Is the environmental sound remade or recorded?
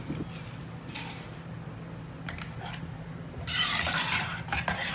recorded